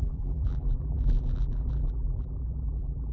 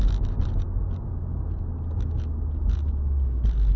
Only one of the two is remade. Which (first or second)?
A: first